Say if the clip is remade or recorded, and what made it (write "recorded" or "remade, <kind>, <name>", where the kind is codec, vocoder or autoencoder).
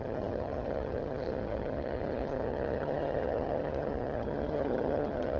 remade, vocoder, HiFi-GAN